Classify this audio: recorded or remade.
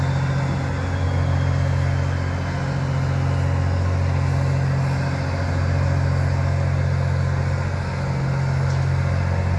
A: recorded